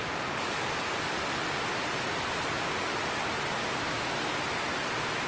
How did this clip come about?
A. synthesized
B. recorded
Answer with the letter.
B